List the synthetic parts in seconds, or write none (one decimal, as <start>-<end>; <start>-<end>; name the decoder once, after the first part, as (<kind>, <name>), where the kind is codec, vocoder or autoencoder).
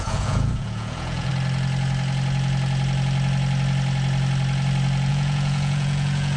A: 0.0-1.3 (vocoder, Vocos); 5.1-6.4